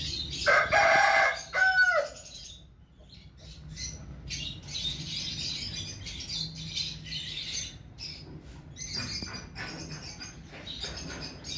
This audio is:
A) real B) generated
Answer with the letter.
A